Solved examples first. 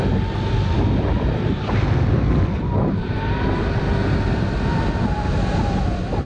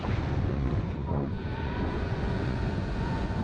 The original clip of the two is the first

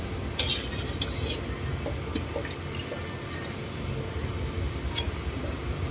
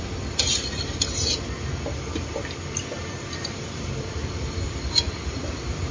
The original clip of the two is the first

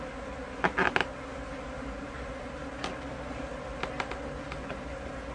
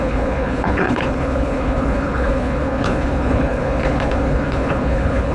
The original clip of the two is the first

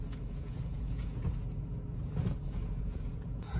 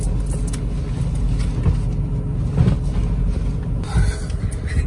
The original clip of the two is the second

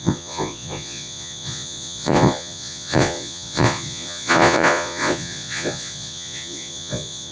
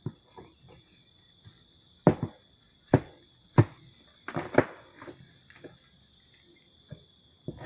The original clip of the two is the second